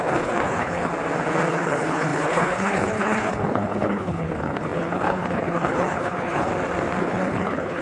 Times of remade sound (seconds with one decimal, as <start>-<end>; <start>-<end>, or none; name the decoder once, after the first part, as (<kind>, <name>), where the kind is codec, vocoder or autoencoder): 0.0-0.9 (codec, HILCodec); 1.5-6.5; 7.0-7.8